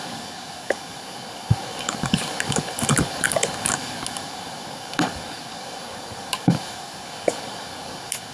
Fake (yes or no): yes